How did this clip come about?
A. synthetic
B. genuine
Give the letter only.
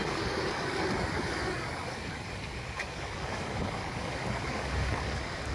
A